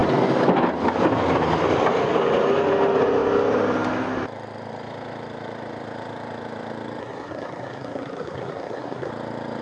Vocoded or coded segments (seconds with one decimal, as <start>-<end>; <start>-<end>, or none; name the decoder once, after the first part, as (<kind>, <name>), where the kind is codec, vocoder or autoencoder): 7.0-9.1 (codec, SNAC)

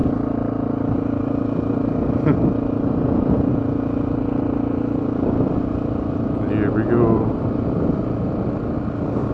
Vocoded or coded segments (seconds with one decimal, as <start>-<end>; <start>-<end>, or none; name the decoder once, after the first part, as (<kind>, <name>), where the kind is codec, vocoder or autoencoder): none